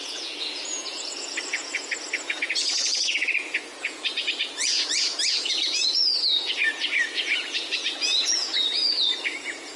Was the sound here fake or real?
fake